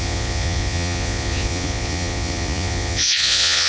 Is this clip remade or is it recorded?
remade